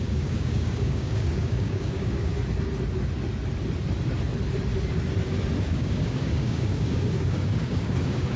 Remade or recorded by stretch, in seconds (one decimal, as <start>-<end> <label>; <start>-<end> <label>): 0.0-2.3 remade; 2.3-5.6 recorded; 5.6-8.4 remade